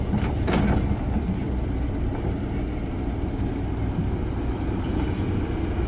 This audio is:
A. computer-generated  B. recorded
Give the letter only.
B